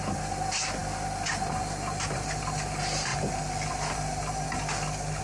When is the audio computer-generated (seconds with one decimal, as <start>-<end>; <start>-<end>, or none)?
none